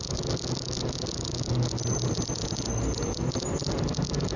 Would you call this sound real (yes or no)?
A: yes